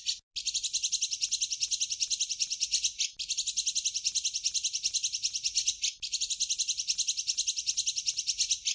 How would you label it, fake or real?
real